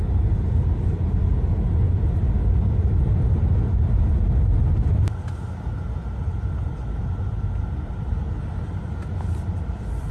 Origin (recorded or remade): recorded